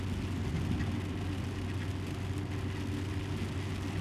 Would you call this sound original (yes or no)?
yes